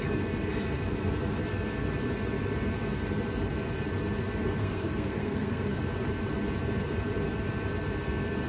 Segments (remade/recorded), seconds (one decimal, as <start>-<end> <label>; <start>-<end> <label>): 0.0-4.6 recorded; 4.6-5.8 remade; 5.8-8.5 recorded